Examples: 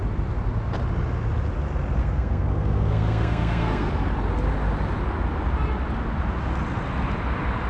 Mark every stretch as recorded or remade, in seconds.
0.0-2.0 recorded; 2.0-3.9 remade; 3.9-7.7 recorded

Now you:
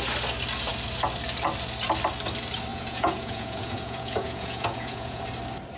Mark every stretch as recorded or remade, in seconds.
0.0-2.7 recorded; 2.7-5.2 remade; 5.2-5.8 recorded

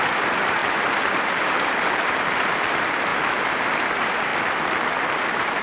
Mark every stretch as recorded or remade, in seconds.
0.0-3.1 remade; 3.1-3.9 recorded; 3.9-4.3 remade; 4.3-5.1 recorded; 5.1-5.6 remade

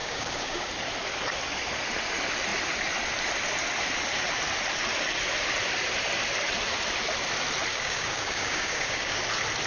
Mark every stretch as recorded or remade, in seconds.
0.0-0.7 remade; 0.7-7.7 recorded; 7.7-9.2 remade; 9.2-9.7 recorded

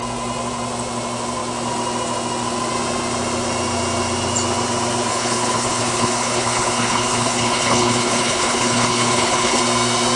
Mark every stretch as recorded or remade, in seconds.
0.0-5.1 recorded; 5.1-9.6 remade; 9.6-10.2 recorded

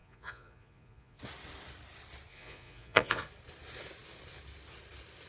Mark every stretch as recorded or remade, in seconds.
0.0-1.2 remade; 1.2-2.3 recorded; 2.3-3.3 remade; 3.3-5.3 recorded